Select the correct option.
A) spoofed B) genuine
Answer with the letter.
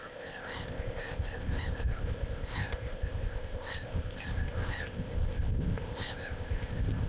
A